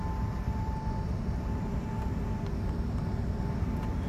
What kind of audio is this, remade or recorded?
recorded